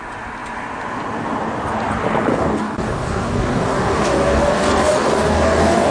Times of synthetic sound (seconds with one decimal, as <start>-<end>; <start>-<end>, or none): 2.3-5.9